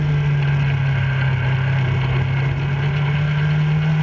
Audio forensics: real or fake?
real